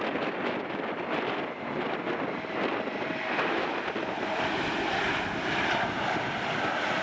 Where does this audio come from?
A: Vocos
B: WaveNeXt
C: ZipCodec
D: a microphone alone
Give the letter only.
D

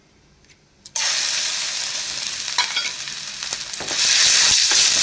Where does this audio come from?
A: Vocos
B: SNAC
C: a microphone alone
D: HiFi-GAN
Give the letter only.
C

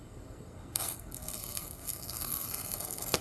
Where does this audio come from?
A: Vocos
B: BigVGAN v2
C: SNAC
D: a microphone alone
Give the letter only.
C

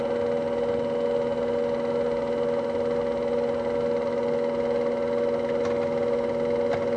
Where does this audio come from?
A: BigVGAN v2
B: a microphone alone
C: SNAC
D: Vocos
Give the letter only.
B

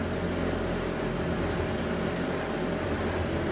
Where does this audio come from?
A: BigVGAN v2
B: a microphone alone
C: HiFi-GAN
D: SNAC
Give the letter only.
B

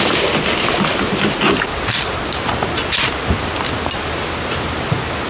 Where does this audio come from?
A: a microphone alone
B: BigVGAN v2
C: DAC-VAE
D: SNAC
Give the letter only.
A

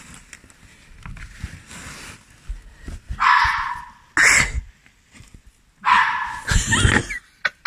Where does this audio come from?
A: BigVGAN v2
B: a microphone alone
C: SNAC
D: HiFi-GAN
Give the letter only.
B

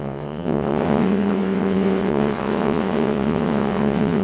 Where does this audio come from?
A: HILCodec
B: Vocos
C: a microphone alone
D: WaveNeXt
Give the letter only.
D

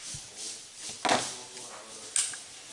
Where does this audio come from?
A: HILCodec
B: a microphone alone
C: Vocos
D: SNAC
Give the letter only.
B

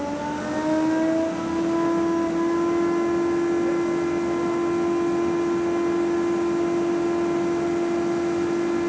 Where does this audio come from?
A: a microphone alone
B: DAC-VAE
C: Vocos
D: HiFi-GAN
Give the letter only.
A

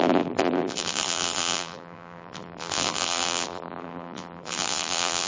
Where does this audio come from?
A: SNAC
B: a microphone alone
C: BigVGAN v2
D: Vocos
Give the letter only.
C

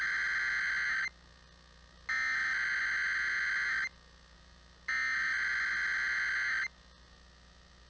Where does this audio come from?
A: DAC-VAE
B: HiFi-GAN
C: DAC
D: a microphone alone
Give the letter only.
D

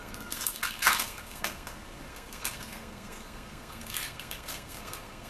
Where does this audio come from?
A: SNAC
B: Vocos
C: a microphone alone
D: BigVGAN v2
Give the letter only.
A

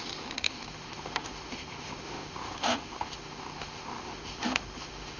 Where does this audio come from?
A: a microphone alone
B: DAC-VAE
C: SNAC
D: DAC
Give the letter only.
B